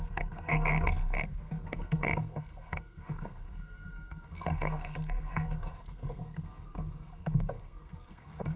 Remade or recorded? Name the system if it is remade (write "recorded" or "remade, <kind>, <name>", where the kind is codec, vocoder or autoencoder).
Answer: remade, codec, SNAC